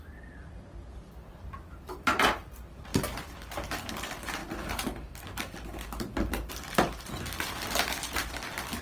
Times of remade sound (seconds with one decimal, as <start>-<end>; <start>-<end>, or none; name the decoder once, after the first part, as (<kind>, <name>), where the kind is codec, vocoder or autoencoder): 0.0-2.9 (vocoder, BigVGAN v2); 3.9-4.4; 6.5-8.8